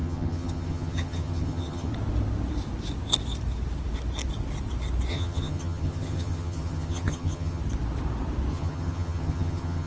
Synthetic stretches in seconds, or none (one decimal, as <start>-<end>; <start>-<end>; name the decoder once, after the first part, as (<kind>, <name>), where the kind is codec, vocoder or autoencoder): 0.0-1.9 (vocoder, HiFi-GAN); 5.1-7.6; 8.5-9.9